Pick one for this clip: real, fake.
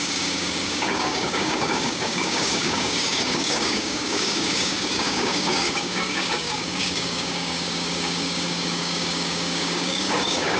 fake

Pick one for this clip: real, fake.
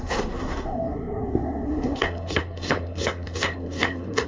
fake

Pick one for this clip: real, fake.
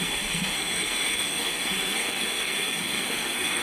fake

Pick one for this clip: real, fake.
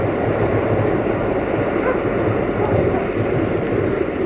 real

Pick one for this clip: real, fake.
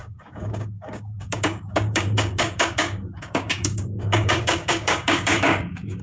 fake